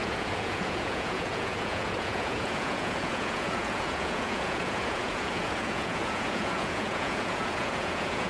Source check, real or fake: fake